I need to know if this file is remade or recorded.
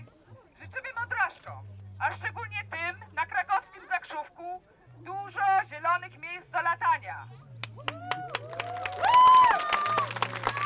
recorded